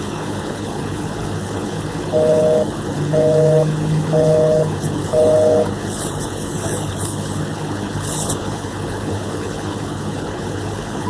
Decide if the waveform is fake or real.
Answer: fake